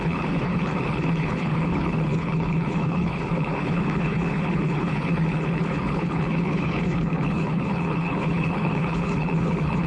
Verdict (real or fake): fake